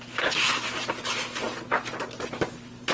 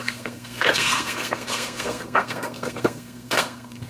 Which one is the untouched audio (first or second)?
first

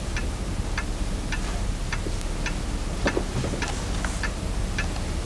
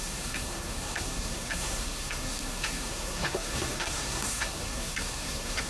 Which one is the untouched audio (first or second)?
first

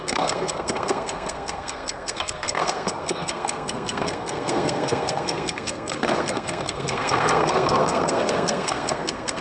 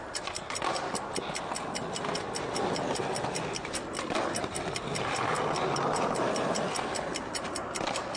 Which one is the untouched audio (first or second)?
second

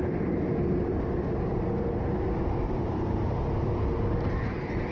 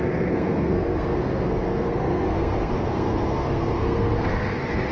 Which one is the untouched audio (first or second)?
first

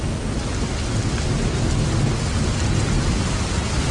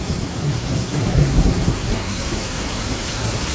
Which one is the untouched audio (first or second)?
first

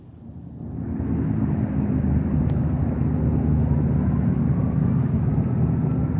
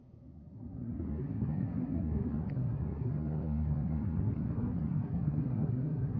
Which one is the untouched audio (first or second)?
first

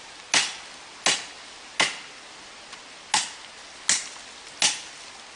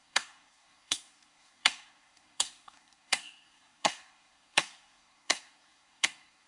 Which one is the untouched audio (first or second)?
first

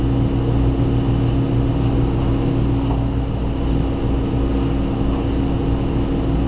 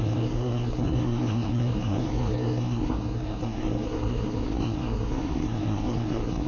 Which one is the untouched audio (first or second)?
first